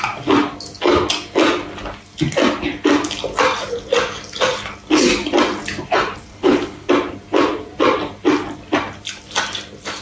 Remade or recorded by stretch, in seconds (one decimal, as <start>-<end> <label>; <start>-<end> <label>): 0.0-6.3 recorded; 6.3-6.9 remade; 6.9-10.0 recorded